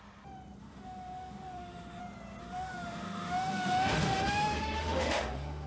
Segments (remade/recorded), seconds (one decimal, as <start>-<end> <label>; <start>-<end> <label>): 0.0-0.6 recorded; 0.6-2.0 remade; 2.0-2.4 recorded; 2.4-5.7 remade